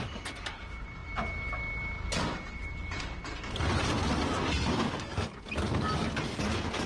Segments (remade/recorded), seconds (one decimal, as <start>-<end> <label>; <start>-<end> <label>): 0.0-6.9 recorded